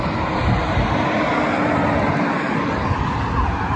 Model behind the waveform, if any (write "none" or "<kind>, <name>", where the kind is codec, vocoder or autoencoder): none